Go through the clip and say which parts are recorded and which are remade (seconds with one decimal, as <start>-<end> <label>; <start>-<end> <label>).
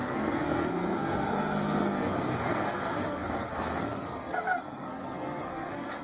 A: 0.0-6.0 remade